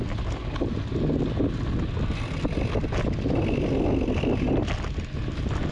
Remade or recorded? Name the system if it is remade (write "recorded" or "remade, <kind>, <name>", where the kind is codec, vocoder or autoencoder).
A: recorded